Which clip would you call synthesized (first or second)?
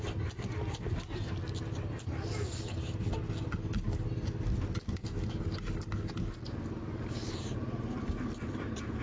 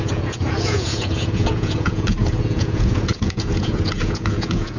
second